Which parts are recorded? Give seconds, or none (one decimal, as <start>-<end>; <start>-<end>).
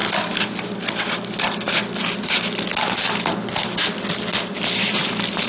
0.0-5.5